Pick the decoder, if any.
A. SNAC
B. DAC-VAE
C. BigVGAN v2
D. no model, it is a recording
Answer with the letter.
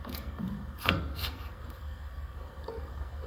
A